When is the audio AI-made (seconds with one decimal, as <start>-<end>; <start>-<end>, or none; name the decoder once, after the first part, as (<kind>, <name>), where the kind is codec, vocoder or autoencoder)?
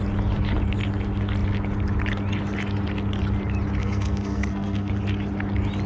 3.8-4.9 (codec, SNAC)